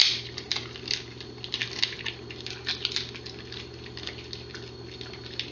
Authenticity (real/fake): real